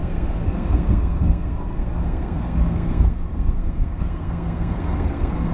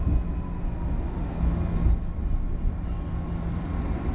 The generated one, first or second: first